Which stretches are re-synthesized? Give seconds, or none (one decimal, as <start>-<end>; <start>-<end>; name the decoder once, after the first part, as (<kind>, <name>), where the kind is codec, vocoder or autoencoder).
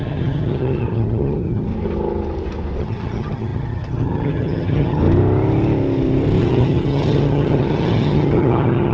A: 0.0-1.7 (vocoder, HiFi-GAN); 2.8-5.0; 6.4-8.9